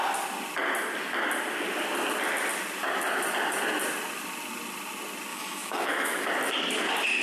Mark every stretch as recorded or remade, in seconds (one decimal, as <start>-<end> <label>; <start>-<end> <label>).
0.0-5.3 recorded; 5.3-6.3 remade; 6.3-7.2 recorded